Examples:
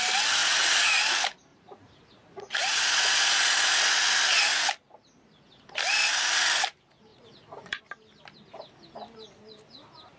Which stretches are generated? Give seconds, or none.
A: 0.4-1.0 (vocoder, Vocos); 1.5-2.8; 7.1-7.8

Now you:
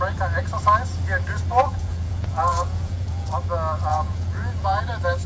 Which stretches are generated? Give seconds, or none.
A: 1.5-3.3 (vocoder, Vocos); 3.9-4.8